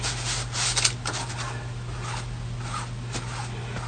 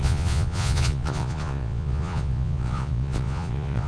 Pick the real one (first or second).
first